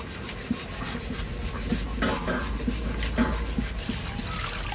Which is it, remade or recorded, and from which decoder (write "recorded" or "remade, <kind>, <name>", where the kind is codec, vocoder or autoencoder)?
recorded